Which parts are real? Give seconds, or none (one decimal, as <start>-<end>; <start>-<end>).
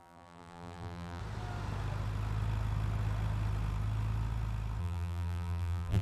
1.2-4.8